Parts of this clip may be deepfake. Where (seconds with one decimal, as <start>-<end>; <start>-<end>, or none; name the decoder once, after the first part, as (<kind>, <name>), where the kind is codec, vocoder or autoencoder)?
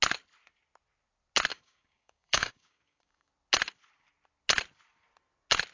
1.5-3.3 (codec, DAC)